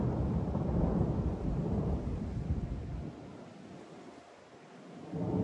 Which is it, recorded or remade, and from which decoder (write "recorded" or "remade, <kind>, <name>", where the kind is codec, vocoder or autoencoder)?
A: recorded